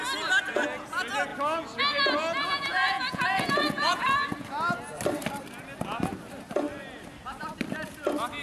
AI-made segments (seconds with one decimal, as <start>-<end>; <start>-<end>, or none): 2.4-4.1